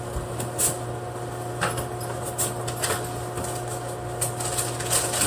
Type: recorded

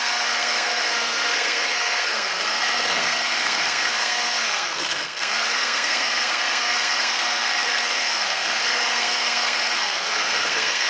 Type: remade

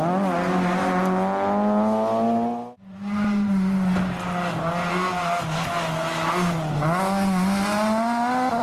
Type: recorded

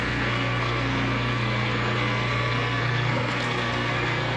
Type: remade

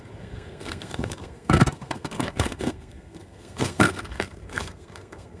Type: remade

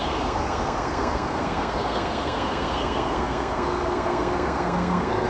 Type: remade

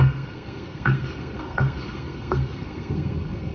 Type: remade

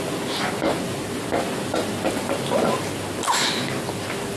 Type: recorded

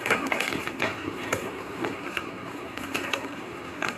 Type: remade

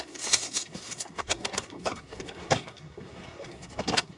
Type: remade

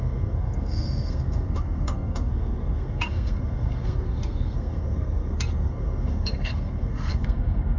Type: remade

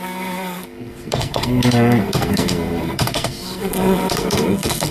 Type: remade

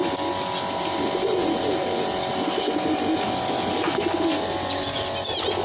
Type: recorded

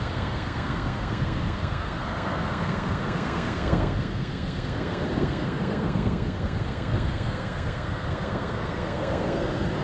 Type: remade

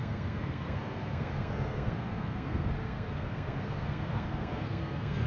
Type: remade